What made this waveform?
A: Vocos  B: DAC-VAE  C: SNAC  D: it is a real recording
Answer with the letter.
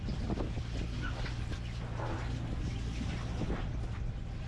D